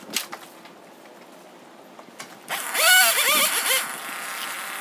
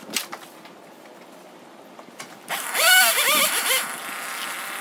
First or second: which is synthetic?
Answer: second